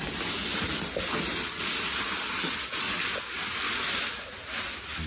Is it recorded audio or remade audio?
recorded